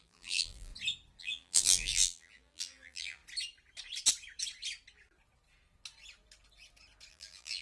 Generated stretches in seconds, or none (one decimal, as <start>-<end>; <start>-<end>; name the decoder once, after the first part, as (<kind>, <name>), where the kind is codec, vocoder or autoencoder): 0.0-0.7 (vocoder, BigVGAN v2); 1.2-3.2; 7.1-7.6